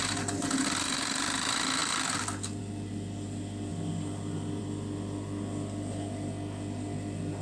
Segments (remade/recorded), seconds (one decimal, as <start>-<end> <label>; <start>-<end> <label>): 0.0-3.7 recorded; 3.7-4.6 remade; 4.6-7.4 recorded